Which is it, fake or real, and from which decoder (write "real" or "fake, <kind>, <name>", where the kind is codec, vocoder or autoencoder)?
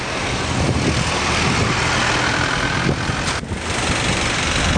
real